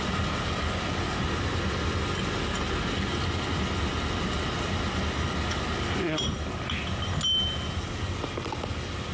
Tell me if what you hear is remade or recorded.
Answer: recorded